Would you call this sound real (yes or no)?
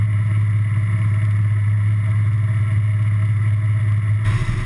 yes